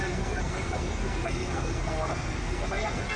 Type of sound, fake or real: fake